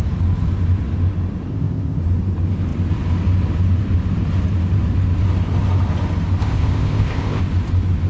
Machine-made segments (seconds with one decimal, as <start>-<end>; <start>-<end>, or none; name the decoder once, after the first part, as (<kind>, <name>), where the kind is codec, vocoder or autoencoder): 1.5-2.0 (codec, ZipCodec); 6.4-7.4